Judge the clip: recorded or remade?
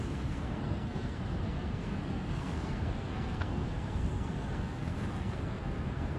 remade